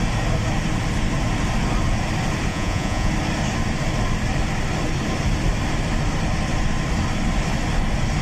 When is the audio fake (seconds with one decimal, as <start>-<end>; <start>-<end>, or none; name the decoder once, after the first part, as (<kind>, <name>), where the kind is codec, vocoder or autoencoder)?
2.5-3.1 (vocoder, Vocos)